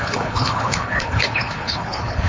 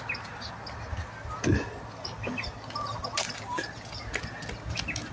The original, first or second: second